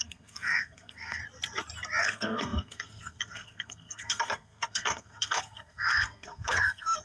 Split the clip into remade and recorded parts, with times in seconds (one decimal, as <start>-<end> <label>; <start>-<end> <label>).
0.0-1.2 remade; 1.2-2.0 recorded; 2.0-7.0 remade